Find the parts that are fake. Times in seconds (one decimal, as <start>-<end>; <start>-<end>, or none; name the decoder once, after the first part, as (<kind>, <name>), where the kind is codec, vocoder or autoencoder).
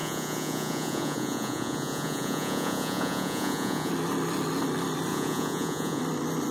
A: 0.0-3.9 (vocoder, Vocos); 5.1-6.0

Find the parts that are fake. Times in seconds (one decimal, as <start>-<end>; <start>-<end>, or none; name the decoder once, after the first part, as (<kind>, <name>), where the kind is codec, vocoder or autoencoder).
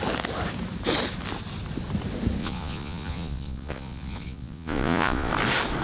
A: 2.4-5.3 (vocoder, Vocos)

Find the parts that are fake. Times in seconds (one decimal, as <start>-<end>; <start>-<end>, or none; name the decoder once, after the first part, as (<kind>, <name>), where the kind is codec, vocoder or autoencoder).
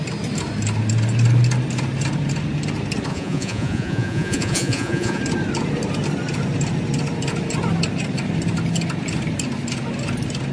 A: 3.1-5.2 (vocoder, Vocos)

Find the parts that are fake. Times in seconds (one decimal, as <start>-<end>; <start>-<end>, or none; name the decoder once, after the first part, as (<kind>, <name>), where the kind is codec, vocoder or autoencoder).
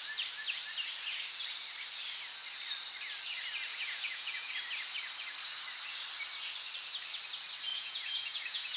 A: 3.7-4.5 (vocoder, Vocos); 7.7-8.8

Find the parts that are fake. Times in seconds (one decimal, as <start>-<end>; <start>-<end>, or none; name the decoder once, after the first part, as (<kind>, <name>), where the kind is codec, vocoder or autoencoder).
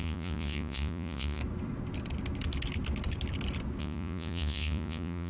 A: 0.0-1.4 (vocoder, Vocos); 3.8-5.3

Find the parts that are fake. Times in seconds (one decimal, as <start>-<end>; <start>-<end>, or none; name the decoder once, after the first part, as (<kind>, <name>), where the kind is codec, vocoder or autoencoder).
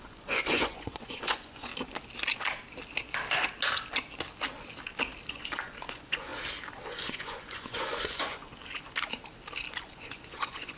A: 0.0-1.7 (vocoder, Vocos); 5.3-6.3; 6.9-8.5; 9.8-10.8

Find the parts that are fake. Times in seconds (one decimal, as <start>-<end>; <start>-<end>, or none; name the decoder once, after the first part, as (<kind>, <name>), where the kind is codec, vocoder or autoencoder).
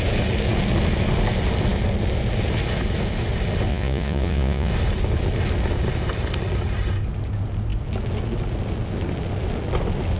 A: 3.7-4.7 (vocoder, Vocos)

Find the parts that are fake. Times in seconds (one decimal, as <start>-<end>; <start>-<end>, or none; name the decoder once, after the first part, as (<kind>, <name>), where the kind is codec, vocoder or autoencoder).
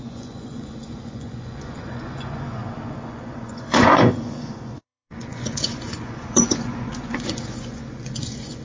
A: 0.0-8.6 (vocoder, Vocos)